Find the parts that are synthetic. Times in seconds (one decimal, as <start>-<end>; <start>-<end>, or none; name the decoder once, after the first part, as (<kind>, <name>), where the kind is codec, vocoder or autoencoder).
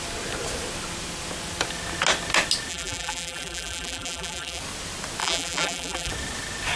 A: 2.7-4.6 (vocoder, BigVGAN v2); 5.2-6.1